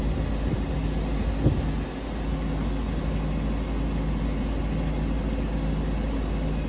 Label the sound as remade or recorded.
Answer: recorded